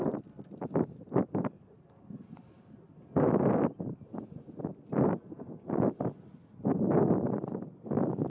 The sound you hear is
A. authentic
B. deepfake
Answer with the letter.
A